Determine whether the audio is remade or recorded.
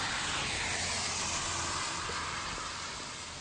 recorded